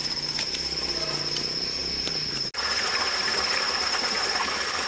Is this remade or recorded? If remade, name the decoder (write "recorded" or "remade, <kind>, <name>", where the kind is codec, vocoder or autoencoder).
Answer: recorded